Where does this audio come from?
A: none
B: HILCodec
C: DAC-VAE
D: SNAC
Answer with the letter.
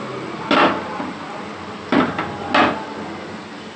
A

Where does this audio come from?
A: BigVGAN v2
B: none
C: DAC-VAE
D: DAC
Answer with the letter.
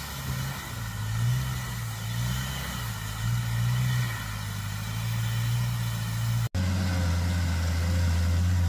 B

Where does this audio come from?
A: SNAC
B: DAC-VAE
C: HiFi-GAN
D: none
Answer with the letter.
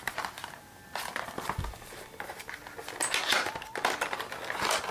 D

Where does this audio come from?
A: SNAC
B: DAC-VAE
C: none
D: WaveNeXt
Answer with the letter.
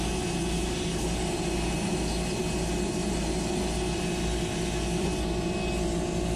C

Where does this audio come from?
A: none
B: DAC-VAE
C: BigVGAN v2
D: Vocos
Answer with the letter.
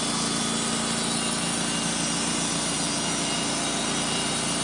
A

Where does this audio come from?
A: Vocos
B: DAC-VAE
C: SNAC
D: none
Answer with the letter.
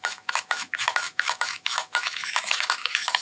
B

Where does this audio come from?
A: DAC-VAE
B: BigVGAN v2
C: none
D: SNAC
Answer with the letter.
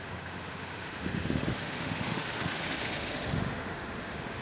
A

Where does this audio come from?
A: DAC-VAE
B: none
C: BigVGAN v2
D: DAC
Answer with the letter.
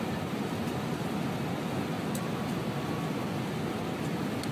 B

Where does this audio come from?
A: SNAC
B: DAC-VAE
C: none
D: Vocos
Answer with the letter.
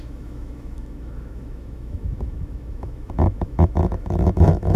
B